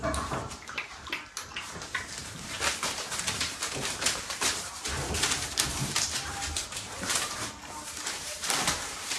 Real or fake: fake